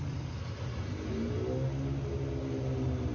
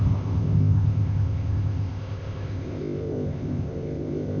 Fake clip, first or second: second